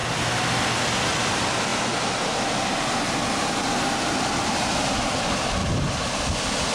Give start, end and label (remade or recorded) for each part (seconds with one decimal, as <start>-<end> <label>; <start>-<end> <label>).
0.0-0.7 remade; 0.7-5.6 recorded; 5.6-6.7 remade